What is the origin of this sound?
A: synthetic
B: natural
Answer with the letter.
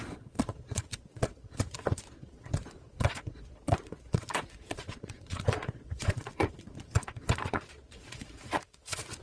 A